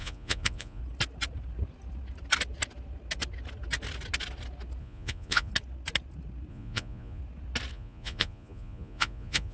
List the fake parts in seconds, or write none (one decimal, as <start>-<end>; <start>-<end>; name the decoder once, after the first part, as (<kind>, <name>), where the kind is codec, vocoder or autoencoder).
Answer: 0.0-0.8 (vocoder, Vocos); 4.8-5.5; 6.5-7.2; 7.7-9.5